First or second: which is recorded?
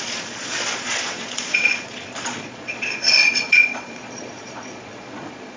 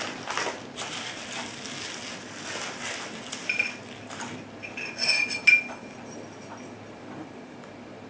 second